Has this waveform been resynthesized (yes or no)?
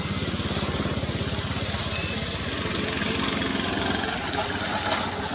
no